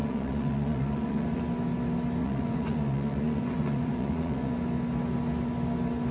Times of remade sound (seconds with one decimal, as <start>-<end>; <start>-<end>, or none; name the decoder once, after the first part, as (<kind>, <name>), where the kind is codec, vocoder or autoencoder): 0.0-1.4 (vocoder, Vocos); 2.2-4.5